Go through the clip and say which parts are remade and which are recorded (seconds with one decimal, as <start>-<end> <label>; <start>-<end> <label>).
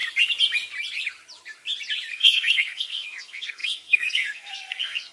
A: 0.0-2.1 recorded; 2.1-5.1 remade